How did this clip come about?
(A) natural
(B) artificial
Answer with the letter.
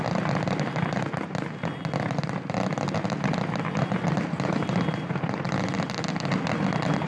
A